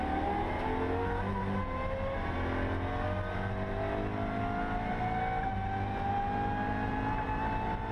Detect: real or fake real